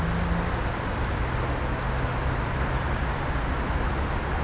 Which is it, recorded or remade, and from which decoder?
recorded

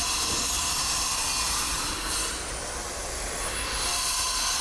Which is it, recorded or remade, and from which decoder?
recorded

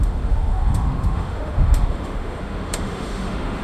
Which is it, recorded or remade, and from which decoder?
remade, autoencoder, DAC-VAE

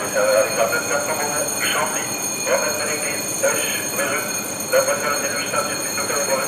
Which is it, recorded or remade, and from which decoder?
recorded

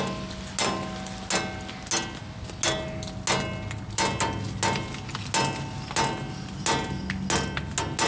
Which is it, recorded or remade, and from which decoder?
recorded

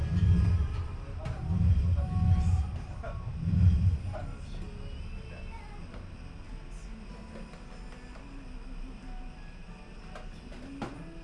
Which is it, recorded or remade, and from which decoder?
recorded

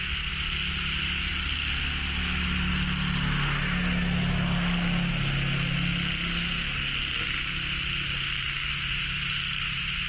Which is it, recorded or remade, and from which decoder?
recorded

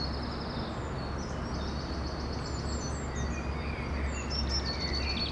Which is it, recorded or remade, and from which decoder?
recorded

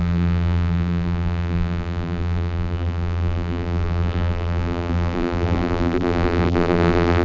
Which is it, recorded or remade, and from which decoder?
remade, vocoder, BigVGAN v2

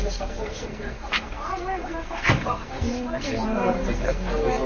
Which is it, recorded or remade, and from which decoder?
remade, codec, SNAC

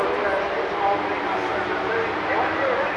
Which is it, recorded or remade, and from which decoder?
recorded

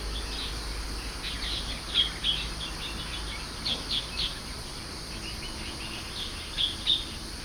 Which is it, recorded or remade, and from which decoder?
recorded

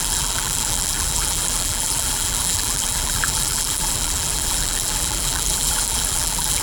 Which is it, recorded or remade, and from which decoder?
remade, vocoder, BigVGAN v2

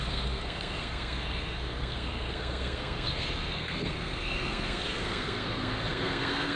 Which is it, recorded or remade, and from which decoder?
remade, codec, SNAC